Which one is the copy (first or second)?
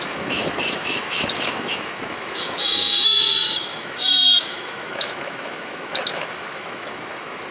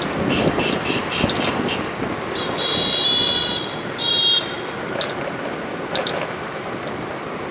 first